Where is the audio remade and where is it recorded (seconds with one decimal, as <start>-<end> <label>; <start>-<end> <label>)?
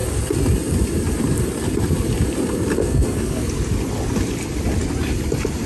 0.0-2.8 recorded; 2.8-3.5 remade; 3.5-5.7 recorded